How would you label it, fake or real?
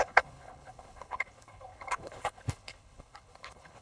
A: fake